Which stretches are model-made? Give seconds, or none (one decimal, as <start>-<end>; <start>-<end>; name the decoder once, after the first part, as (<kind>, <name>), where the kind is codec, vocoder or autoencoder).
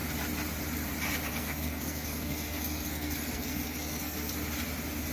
1.3-4.3 (codec, SNAC)